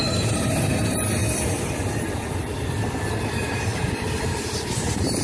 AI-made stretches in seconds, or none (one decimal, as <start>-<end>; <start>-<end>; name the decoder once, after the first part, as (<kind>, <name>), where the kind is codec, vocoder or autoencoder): 0.0-1.2 (vocoder, BigVGAN v2); 3.2-5.2